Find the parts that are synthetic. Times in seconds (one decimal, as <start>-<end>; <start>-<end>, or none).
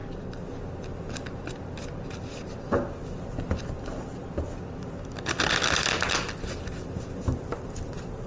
none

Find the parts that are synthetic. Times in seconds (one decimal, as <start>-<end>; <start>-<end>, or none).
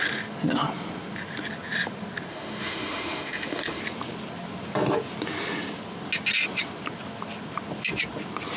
2.3-3.8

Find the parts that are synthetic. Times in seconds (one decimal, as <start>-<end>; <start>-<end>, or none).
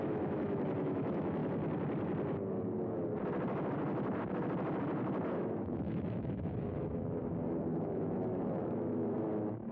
0.0-1.4; 5.3-7.2; 7.9-9.7